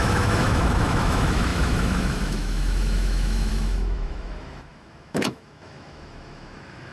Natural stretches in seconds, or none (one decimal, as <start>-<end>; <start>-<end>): none